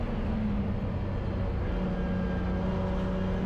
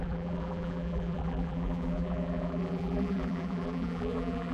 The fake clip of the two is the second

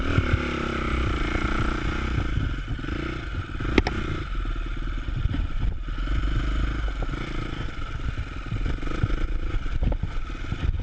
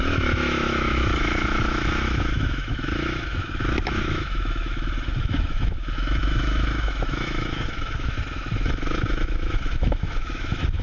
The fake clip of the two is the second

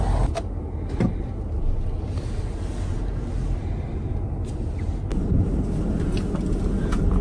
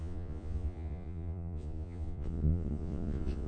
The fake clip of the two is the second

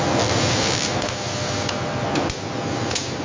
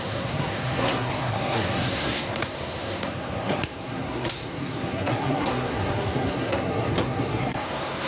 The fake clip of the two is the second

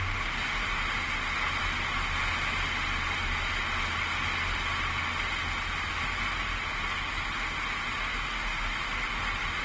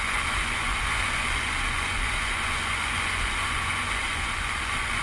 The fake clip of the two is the second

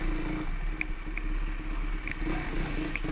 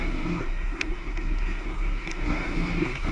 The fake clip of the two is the second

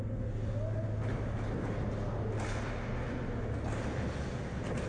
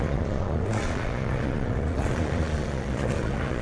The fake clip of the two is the second